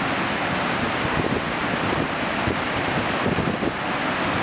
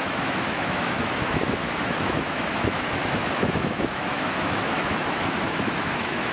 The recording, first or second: first